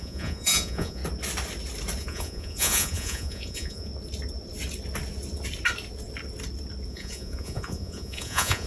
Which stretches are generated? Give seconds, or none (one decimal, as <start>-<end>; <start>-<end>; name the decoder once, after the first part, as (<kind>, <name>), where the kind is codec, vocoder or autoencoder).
0.0-1.0 (vocoder, Vocos); 2.0-3.9; 6.9-8.7